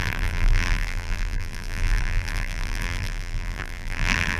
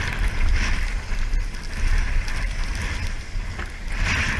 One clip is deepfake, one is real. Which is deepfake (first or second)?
first